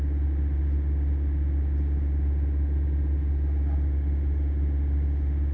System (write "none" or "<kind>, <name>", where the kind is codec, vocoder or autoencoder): none